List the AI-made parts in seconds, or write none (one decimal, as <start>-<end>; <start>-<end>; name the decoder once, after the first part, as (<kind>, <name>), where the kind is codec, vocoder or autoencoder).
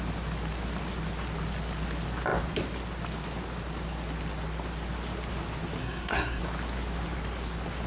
5.8-6.4 (codec, SNAC)